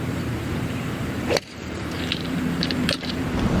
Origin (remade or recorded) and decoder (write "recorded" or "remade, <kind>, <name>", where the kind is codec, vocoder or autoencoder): remade, vocoder, BigVGAN v2